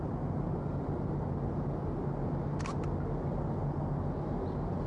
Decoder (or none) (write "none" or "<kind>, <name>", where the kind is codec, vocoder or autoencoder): none